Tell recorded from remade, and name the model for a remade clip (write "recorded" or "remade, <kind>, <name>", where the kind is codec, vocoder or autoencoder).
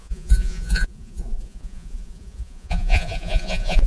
remade, vocoder, Vocos